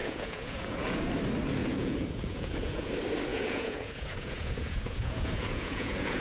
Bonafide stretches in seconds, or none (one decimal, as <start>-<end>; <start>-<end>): 1.1-1.6; 2.9-3.3